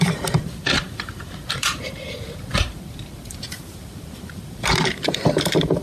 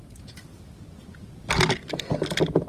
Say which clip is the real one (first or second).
second